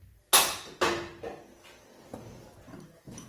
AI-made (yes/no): no